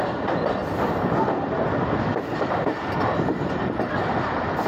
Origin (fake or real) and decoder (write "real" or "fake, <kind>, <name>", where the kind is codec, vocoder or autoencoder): real